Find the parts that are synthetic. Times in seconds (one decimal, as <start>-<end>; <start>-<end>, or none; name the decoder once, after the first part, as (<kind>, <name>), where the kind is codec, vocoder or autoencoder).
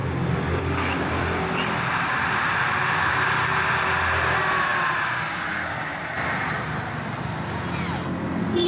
none